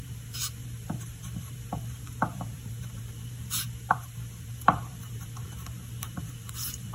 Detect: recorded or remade remade